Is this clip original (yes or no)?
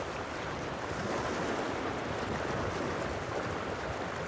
yes